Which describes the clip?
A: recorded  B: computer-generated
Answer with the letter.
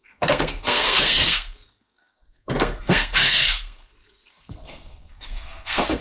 B